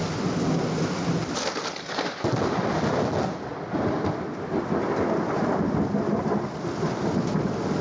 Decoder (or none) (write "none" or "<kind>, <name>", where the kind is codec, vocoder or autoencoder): none